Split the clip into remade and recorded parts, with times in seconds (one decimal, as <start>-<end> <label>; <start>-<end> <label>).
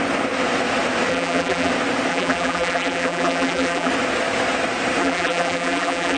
0.0-1.1 recorded; 1.1-1.7 remade; 1.7-2.1 recorded; 2.1-3.9 remade; 3.9-5.0 recorded; 5.0-6.2 remade